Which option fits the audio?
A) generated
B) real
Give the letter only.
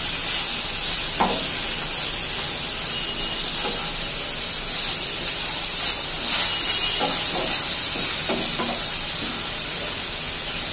B